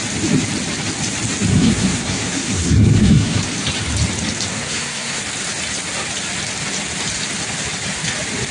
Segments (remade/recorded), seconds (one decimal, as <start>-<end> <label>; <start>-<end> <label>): 0.0-1.5 recorded; 1.5-3.4 remade; 3.4-4.5 recorded; 4.5-5.2 remade; 5.2-8.5 recorded

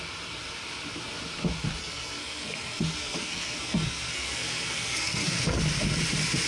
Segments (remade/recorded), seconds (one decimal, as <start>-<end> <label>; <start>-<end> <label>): 0.0-1.8 recorded; 1.8-5.6 remade; 5.6-6.5 recorded